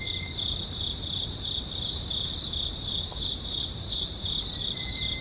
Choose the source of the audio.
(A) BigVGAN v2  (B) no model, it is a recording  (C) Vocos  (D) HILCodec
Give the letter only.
A